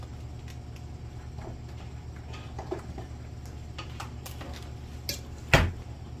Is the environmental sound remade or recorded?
recorded